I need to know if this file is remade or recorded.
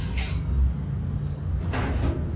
recorded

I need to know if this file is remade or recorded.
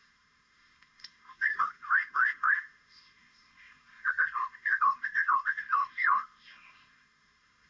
remade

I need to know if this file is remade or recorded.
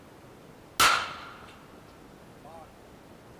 recorded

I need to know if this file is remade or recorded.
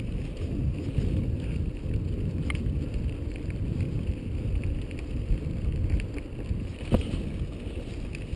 recorded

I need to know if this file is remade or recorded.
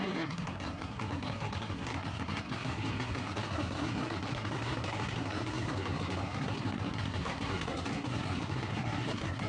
remade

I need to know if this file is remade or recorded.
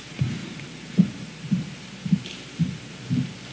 recorded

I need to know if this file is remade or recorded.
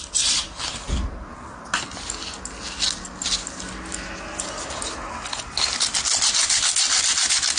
recorded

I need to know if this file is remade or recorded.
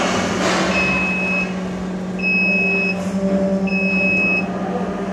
recorded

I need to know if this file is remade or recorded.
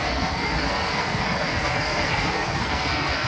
remade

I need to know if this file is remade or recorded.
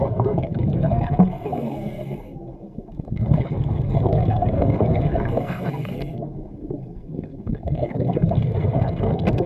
remade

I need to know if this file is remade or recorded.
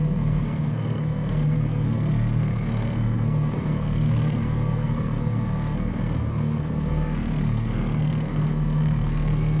remade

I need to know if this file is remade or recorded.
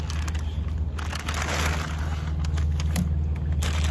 recorded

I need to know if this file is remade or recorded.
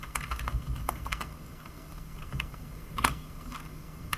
remade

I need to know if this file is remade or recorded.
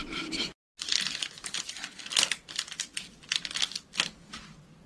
recorded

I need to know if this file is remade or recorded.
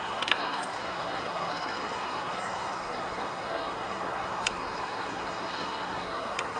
remade